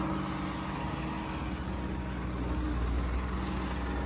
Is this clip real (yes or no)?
yes